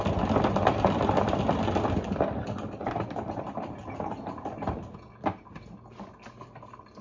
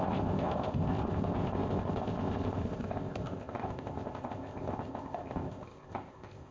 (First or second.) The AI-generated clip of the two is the second